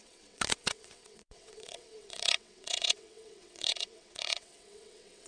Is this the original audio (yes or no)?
no